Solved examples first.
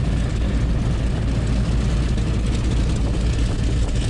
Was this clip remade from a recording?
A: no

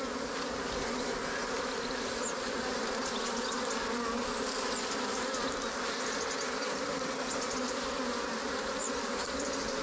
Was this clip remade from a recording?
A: no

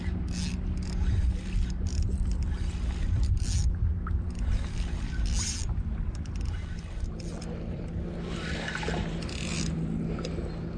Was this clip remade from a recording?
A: no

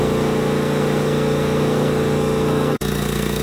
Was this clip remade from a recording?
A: yes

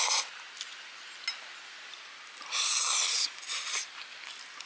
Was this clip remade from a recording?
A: no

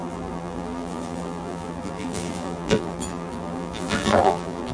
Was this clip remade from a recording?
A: yes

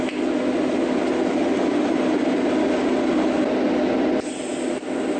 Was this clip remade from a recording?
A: no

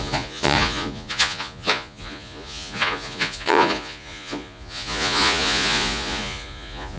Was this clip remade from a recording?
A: yes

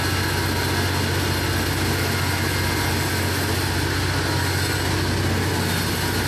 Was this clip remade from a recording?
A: no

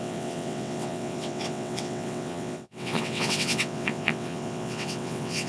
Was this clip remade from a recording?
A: yes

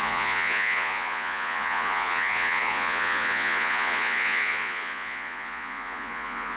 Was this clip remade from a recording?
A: yes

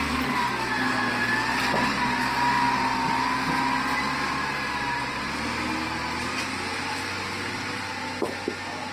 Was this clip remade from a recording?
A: no